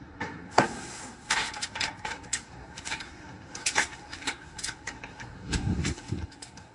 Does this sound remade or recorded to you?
remade